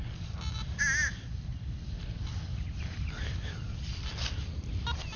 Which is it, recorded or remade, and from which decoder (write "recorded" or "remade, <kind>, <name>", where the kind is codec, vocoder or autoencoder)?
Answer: recorded